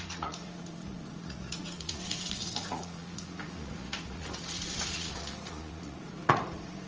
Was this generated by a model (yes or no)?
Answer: yes